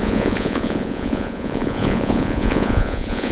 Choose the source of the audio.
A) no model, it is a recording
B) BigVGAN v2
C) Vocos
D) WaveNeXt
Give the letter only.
C